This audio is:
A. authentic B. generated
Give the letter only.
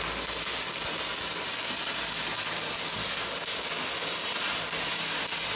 A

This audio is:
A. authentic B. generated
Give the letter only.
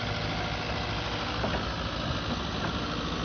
A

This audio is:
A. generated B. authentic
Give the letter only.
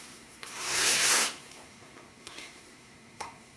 A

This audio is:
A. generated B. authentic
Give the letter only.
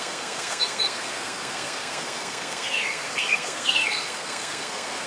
A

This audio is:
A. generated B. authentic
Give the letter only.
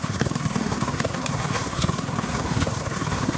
A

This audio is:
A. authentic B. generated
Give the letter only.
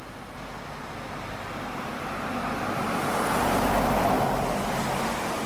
A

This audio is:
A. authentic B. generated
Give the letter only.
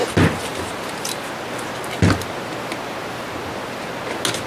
A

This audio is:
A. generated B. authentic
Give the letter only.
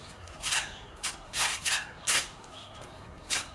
A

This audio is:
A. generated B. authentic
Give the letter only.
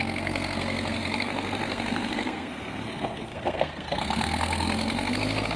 A